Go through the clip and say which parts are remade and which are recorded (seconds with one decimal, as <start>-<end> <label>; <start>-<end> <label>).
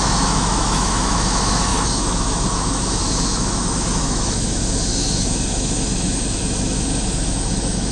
0.0-7.9 remade